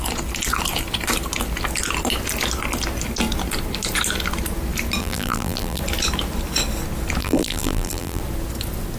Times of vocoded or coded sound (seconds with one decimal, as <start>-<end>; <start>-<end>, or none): 5.0-5.8; 7.2-8.2